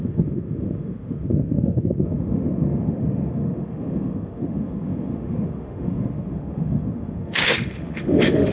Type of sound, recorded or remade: remade